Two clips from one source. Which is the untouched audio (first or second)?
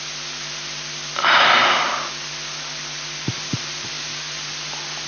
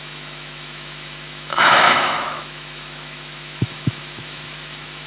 first